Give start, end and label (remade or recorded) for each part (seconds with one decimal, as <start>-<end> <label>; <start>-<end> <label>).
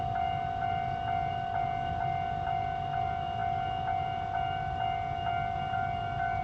0.0-6.4 recorded